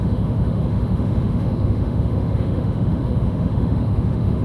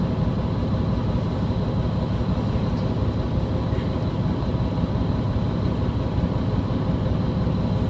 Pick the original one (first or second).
second